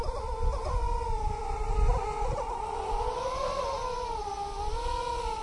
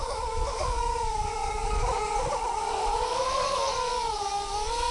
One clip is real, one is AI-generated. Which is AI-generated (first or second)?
second